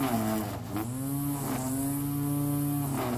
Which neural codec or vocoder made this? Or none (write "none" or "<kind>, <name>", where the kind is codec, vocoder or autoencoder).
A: none